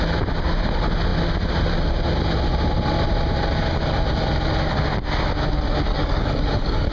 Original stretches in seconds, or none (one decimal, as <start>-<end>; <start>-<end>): 0.0-5.9